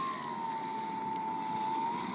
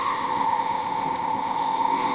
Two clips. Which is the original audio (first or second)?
first